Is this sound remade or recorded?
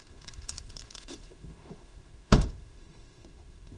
remade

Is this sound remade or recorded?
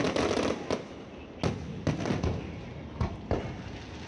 recorded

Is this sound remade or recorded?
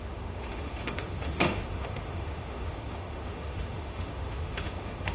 remade